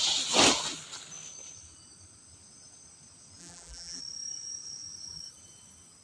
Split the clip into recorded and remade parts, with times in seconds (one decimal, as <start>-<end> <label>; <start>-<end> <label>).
0.0-3.4 recorded; 3.4-4.0 remade; 4.0-6.0 recorded